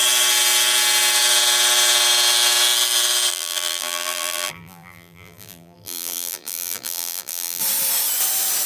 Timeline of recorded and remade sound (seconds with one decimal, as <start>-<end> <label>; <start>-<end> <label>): 0.0-3.3 recorded; 3.3-7.6 remade; 7.6-8.7 recorded